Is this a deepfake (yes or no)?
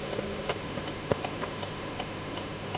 yes